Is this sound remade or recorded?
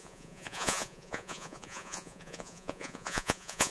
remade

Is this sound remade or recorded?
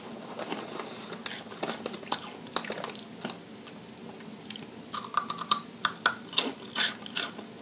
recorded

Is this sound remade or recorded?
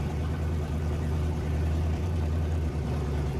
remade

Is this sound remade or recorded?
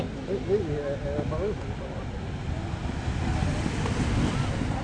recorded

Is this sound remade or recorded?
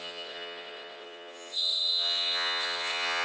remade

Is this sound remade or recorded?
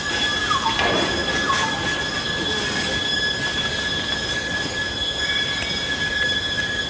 recorded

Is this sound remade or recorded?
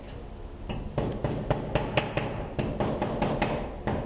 recorded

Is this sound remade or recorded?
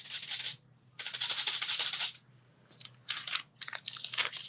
recorded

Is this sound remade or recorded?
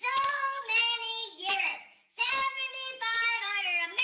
remade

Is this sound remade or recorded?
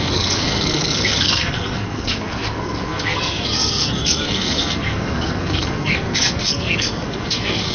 remade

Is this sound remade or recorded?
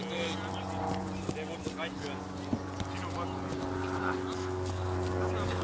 recorded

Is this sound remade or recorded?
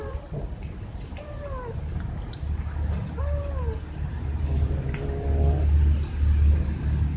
recorded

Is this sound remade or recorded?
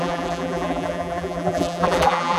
remade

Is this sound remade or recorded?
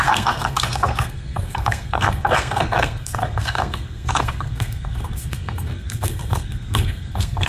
remade